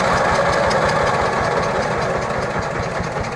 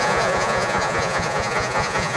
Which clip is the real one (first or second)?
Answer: first